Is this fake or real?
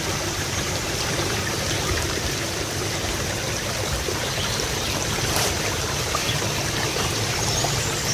fake